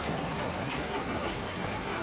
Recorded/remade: remade